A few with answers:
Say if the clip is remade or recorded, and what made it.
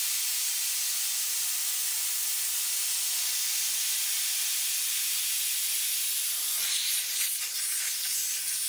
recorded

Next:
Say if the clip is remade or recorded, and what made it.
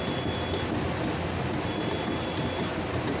recorded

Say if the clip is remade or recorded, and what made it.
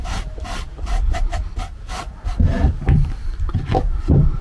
remade, vocoder, BigVGAN v2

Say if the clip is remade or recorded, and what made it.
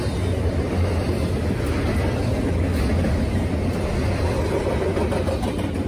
recorded